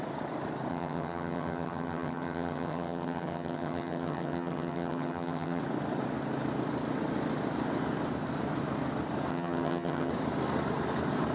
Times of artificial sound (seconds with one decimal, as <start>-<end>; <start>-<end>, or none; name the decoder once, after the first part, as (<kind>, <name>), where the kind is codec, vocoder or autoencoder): 0.7-5.6 (vocoder, HiFi-GAN); 9.3-10.1